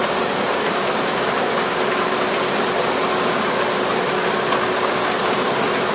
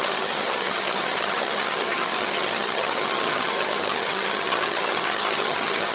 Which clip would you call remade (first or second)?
second